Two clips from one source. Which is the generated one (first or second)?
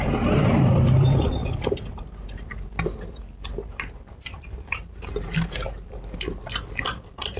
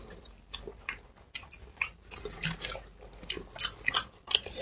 first